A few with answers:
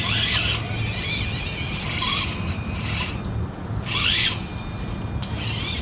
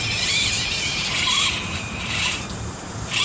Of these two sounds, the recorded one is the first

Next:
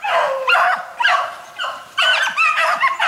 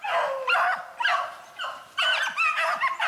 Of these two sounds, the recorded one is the second